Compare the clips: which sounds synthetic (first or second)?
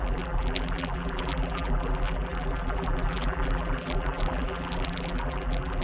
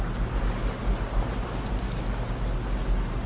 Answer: first